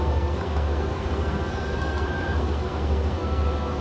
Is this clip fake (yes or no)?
yes